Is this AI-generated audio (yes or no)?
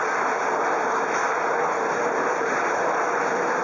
no